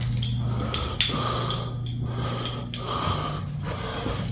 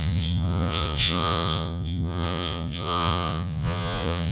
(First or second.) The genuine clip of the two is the first